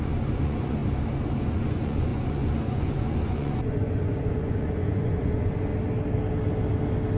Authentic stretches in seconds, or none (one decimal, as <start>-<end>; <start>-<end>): 0.8-1.4; 5.7-7.2